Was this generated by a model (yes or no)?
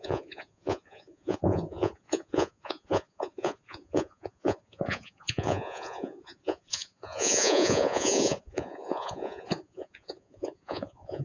yes